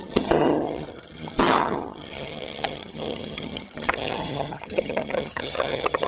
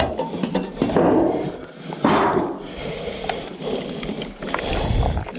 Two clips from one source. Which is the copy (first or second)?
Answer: first